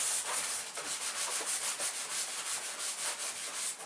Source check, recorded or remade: recorded